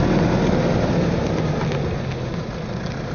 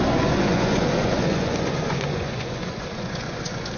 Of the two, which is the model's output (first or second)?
second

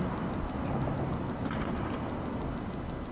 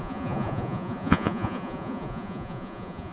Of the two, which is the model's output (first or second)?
second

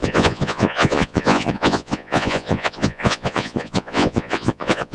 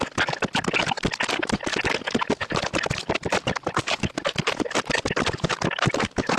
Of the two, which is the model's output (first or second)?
first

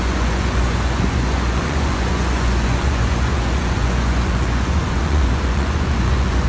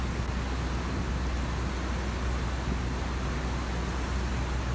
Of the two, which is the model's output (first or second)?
first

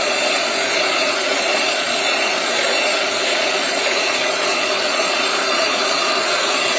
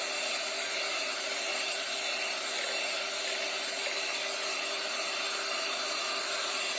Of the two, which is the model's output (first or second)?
first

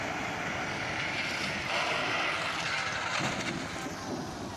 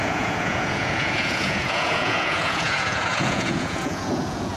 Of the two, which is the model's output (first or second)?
second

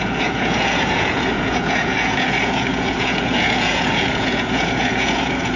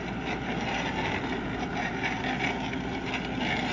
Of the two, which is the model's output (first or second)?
first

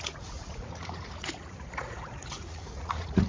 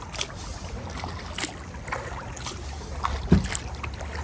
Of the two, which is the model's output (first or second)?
first